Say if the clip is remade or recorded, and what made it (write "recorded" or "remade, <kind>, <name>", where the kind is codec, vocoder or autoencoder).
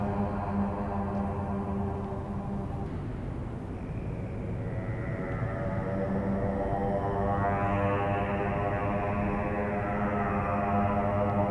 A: recorded